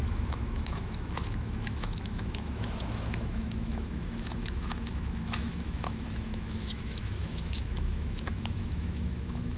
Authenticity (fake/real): fake